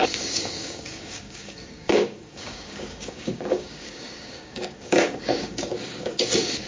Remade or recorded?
remade